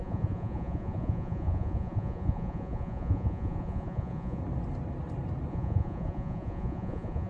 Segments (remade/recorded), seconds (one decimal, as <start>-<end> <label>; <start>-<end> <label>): 0.0-4.4 remade; 4.4-5.5 recorded; 5.5-7.3 remade